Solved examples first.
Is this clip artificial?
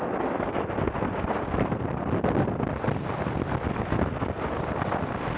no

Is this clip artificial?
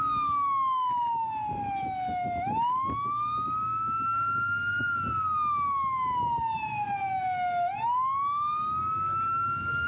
no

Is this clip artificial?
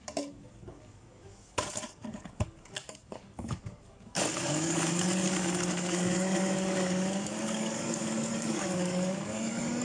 yes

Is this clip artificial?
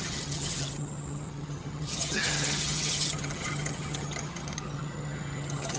yes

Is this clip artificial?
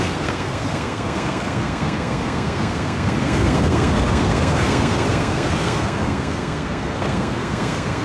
yes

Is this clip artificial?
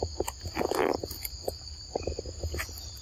no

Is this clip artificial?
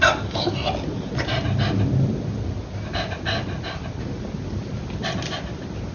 no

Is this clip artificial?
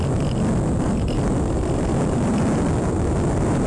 no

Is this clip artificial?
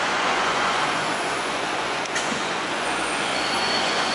yes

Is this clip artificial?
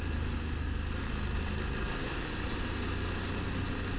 no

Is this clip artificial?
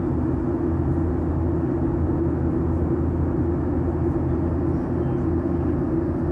no